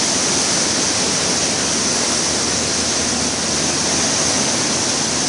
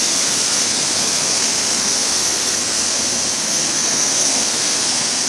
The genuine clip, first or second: first